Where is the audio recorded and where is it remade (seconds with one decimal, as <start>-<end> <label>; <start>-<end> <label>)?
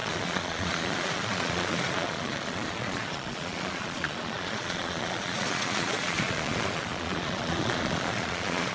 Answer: 0.0-8.7 remade